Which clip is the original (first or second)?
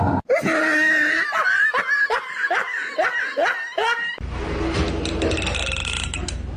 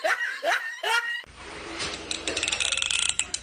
first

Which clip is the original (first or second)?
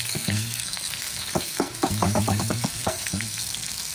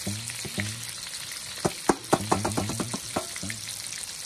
second